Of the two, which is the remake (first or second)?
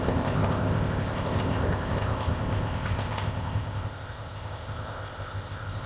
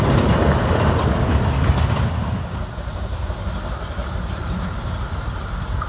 first